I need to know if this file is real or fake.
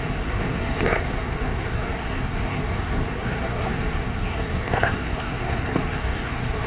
fake